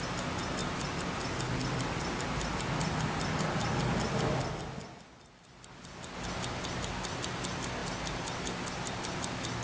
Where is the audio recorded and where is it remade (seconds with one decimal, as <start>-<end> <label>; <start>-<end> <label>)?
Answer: 0.0-9.6 recorded

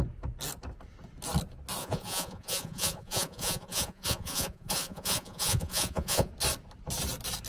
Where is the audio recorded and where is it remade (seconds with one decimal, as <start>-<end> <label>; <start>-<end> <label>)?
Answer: 0.0-1.8 recorded; 1.8-6.3 remade; 6.3-7.5 recorded

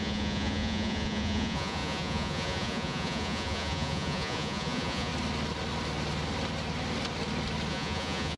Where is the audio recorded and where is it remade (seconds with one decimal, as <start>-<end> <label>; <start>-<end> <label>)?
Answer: 0.0-5.1 remade; 5.1-7.7 recorded; 7.7-8.4 remade

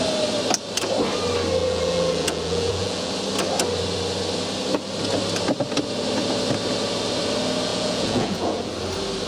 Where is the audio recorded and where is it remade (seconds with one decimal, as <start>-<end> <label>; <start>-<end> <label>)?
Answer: 0.0-1.6 recorded; 1.6-3.1 remade; 3.1-7.7 recorded; 7.7-8.7 remade; 8.7-9.3 recorded

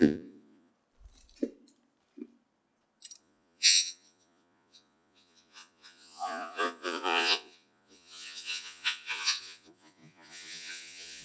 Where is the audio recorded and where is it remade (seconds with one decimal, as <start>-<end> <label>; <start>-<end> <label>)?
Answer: 0.0-0.7 remade; 0.7-3.2 recorded; 3.2-11.2 remade

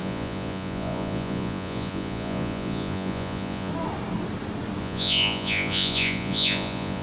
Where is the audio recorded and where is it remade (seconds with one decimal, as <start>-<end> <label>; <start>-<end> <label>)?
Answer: 0.0-3.7 remade; 3.7-4.8 recorded; 4.8-7.0 remade

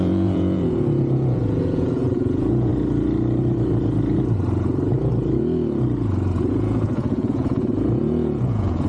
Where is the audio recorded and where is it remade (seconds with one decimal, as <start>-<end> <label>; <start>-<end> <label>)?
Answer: 0.0-2.7 remade; 2.7-6.5 recorded; 6.5-8.9 remade

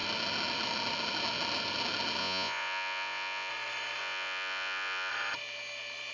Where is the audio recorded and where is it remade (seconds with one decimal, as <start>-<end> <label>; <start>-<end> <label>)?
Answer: 0.0-2.2 recorded; 2.2-3.5 remade; 3.5-4.0 recorded; 4.0-5.1 remade; 5.1-6.1 recorded